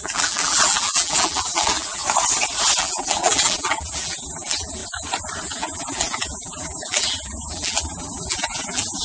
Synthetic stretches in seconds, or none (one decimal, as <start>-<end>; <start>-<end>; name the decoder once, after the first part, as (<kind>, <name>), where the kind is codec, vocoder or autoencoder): 0.0-2.0 (vocoder, BigVGAN v2); 2.8-4.8; 5.4-9.0